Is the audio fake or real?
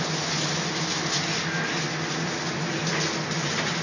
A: real